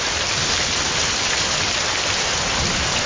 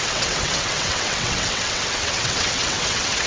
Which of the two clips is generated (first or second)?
second